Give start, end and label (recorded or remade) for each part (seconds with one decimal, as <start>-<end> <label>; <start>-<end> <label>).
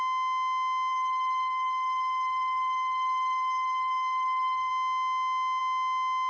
0.0-0.9 recorded; 0.9-4.7 remade; 4.7-6.3 recorded